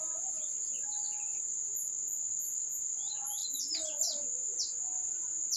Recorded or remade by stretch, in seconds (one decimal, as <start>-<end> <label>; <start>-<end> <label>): 0.0-5.6 recorded